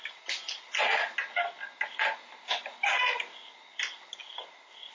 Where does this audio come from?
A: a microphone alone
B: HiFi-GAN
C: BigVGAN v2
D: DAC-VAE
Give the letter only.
A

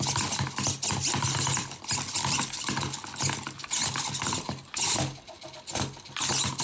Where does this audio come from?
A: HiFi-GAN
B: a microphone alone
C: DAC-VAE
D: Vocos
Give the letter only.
B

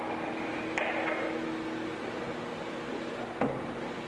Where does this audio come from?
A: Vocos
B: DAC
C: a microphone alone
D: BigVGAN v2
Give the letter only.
C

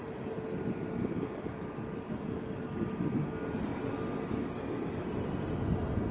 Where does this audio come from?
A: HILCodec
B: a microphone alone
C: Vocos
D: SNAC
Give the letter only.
B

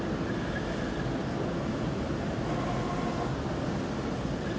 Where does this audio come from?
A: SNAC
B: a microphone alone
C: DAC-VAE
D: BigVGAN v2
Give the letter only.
B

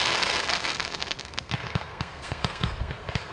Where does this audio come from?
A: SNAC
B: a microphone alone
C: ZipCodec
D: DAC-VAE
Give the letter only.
A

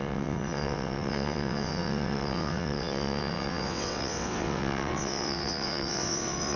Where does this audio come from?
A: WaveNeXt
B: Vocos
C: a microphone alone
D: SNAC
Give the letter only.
A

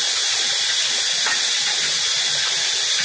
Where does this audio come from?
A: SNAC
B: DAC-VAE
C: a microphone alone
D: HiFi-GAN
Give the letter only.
C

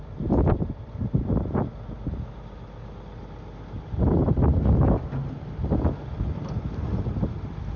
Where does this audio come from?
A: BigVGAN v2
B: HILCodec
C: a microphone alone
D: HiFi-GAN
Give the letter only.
C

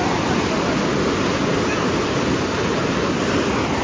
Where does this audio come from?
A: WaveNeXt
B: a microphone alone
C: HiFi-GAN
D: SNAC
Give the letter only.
B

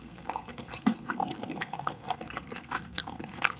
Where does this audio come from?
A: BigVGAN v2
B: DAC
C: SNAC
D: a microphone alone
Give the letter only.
C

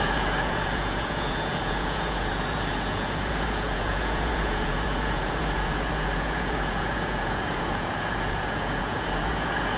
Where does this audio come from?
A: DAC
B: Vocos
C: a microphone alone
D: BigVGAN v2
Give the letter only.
B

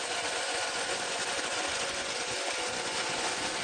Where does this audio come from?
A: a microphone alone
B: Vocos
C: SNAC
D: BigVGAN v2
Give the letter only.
B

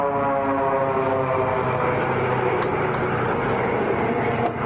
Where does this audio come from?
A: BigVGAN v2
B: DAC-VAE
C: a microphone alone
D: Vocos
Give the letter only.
C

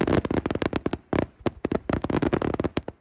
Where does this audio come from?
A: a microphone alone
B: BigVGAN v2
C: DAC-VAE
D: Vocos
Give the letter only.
A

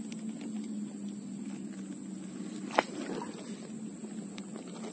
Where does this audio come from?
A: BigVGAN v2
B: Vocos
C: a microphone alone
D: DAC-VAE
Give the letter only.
C